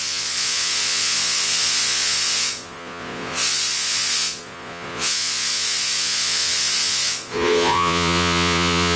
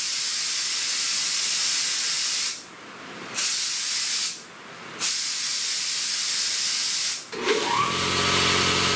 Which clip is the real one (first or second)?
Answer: second